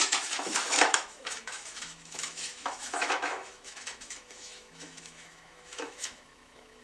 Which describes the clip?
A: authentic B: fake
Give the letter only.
B